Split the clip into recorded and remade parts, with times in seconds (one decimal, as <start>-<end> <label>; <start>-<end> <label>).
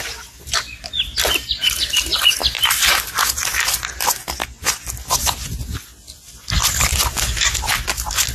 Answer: 0.0-8.3 recorded